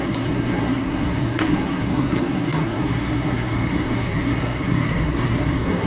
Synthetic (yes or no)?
yes